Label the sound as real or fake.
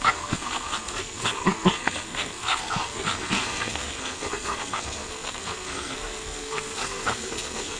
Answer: fake